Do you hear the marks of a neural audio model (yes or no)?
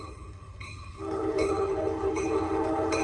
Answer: yes